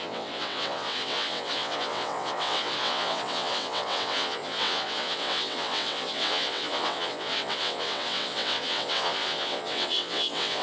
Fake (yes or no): yes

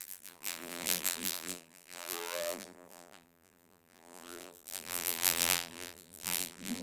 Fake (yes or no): yes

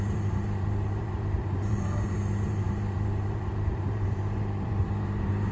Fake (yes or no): yes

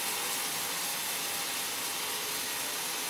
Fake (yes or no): no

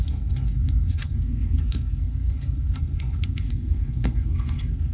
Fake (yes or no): yes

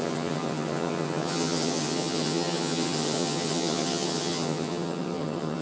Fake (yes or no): yes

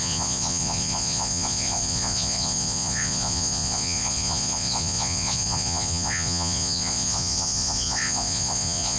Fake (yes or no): yes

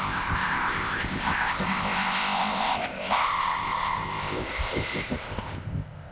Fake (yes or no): yes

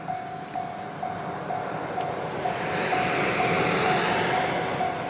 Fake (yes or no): no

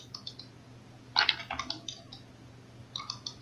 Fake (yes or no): no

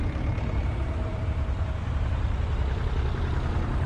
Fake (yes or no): yes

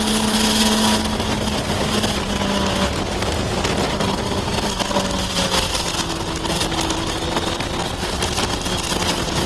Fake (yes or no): no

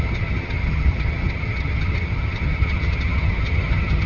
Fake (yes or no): yes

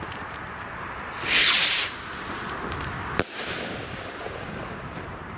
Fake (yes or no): yes